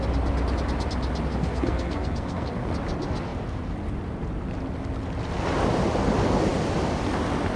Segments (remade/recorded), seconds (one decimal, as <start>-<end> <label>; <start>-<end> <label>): 0.0-1.3 recorded; 1.3-2.7 remade; 2.7-7.6 recorded